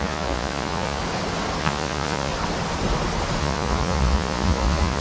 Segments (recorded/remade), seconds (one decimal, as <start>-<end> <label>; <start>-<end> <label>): 0.0-1.0 remade; 1.0-1.6 recorded; 1.6-2.3 remade; 2.3-3.4 recorded; 3.4-5.0 remade